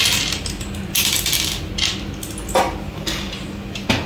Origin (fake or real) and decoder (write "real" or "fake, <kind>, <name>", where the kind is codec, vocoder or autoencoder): real